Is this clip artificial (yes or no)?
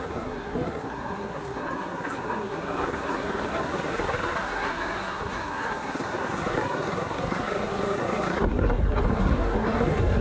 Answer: yes